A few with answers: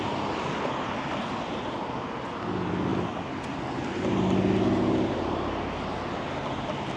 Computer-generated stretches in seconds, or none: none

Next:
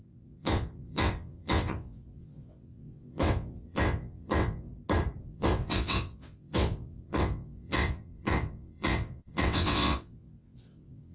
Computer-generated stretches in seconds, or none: 0.0-4.7 (vocoder, WaveNeXt); 5.2-11.1

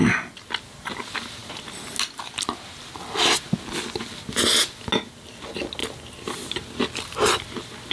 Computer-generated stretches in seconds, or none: none

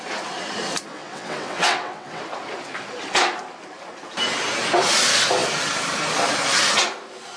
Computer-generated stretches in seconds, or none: 0.9-2.2 (vocoder, WaveNeXt)